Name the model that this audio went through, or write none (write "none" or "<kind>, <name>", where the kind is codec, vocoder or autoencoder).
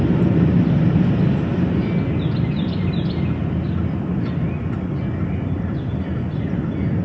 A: none